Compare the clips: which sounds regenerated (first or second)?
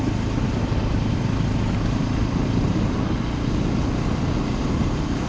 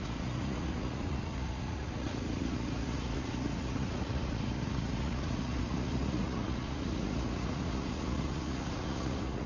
second